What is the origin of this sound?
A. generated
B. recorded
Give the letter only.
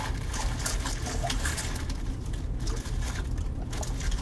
B